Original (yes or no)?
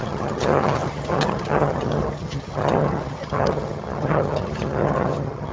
no